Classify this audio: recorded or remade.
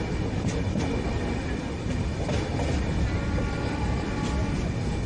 recorded